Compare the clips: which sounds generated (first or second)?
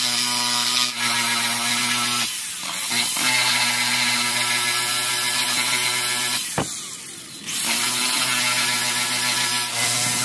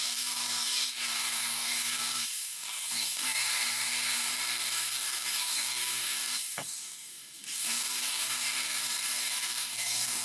second